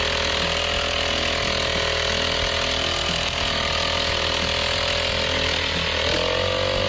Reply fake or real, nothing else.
real